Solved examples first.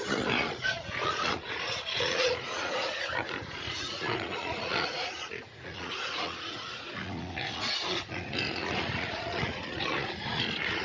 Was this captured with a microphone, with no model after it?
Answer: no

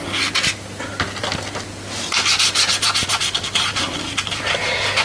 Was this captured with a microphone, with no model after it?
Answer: yes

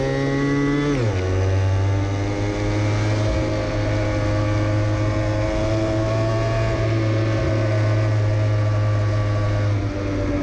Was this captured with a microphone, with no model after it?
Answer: yes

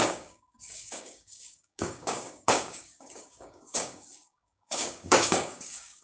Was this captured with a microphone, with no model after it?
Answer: no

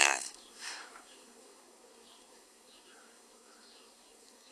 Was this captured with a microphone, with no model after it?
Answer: no